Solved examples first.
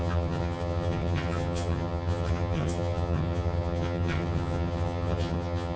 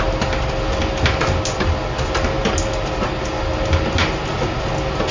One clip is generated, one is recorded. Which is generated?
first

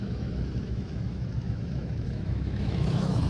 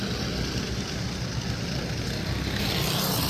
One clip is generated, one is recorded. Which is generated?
first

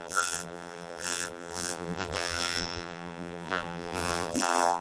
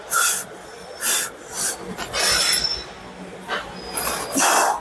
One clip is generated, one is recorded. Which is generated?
first